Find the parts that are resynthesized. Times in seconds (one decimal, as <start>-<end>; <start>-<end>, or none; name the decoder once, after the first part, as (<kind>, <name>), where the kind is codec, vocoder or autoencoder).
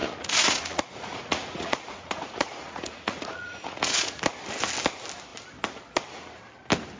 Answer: 0.0-4.2 (vocoder, Vocos)